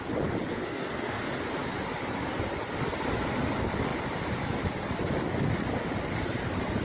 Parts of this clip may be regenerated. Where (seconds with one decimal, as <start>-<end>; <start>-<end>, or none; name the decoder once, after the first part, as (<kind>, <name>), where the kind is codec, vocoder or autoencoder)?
0.5-1.2 (codec, SNAC)